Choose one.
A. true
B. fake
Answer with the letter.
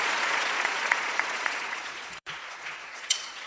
B